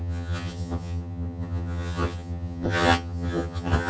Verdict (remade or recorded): remade